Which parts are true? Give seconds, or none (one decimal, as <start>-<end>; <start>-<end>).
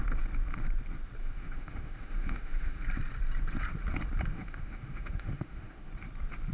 0.0-1.2; 2.8-4.3; 5.9-6.5